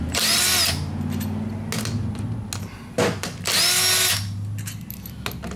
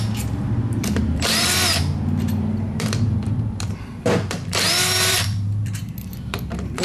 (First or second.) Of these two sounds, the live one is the first